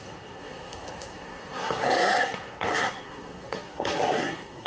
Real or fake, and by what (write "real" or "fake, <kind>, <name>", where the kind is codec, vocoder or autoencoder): fake, codec, SNAC